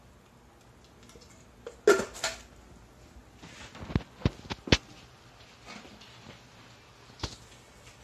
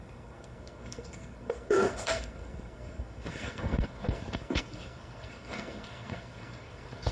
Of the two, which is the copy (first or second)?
second